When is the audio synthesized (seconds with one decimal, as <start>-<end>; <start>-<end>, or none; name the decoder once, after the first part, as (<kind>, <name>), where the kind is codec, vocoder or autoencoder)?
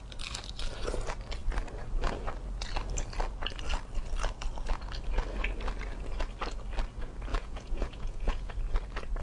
7.3-8.5 (vocoder, Vocos)